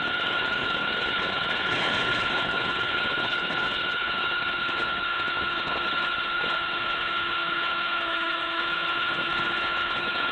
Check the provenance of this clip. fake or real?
fake